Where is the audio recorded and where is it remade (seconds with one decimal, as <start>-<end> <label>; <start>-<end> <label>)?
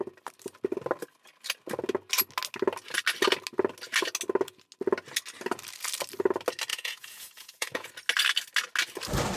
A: 0.0-6.7 recorded; 6.7-7.9 remade; 7.9-9.4 recorded